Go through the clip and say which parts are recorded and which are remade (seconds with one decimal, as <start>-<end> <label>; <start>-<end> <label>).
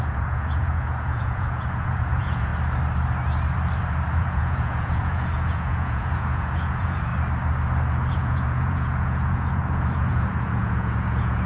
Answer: 0.0-2.5 remade; 2.5-4.2 recorded; 4.2-7.1 remade; 7.1-8.1 recorded; 8.1-11.5 remade